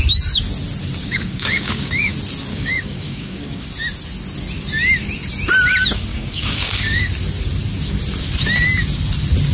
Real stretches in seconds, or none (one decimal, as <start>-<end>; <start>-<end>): 0.0-1.0; 2.1-2.5; 3.7-6.1; 7.1-9.5